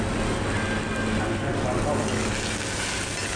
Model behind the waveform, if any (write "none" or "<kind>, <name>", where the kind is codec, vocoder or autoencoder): none